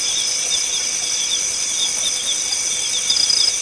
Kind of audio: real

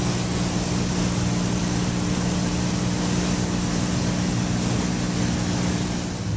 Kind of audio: real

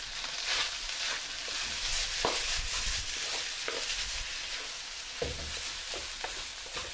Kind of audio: real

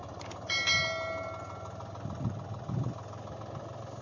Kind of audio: real